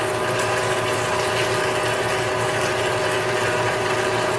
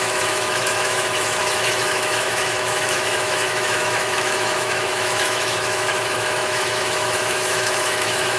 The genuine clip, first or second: first